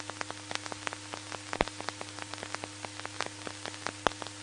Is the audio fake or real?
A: real